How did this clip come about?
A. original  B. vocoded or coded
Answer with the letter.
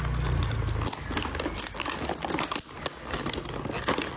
A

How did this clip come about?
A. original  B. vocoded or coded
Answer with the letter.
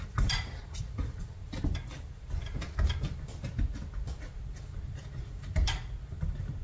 A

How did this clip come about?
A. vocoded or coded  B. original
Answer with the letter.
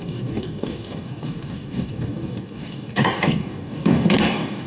A